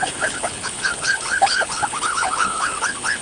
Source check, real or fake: fake